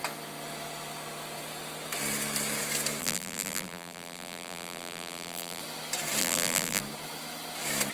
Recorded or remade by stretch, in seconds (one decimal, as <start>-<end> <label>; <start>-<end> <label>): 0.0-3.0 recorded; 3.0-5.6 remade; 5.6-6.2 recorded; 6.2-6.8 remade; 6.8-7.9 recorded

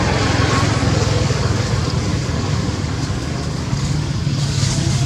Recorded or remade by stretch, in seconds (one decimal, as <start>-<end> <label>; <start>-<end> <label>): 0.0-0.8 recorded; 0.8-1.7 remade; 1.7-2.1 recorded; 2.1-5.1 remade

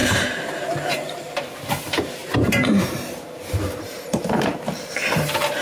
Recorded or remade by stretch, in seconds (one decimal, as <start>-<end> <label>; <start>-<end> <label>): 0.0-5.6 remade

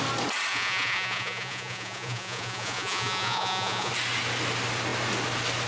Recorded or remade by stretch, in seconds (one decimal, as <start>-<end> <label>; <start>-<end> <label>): 0.0-0.5 recorded; 0.5-3.9 remade; 3.9-5.7 recorded

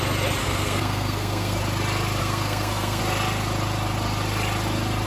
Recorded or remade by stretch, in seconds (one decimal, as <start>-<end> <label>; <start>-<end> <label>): 0.0-0.4 recorded; 0.4-1.6 remade; 1.6-2.2 recorded; 2.2-3.0 remade; 3.0-5.1 recorded

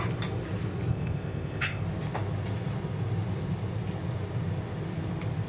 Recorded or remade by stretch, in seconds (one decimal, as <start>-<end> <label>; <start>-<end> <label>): 0.0-0.9 recorded; 0.9-1.8 remade; 1.8-5.5 recorded

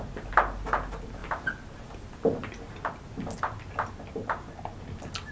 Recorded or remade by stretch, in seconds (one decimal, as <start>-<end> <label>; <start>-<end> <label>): 0.0-5.3 recorded

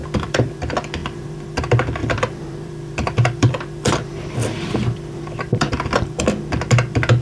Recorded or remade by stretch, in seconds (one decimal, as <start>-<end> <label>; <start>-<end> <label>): 0.0-0.6 remade; 0.6-1.0 recorded; 1.0-1.6 remade; 1.6-2.0 recorded; 2.0-6.2 remade; 6.2-7.2 recorded